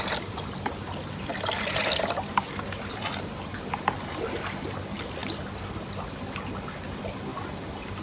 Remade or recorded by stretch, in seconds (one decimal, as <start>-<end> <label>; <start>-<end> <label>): 0.0-8.0 recorded